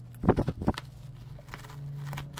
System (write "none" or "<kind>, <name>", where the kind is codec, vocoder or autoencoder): none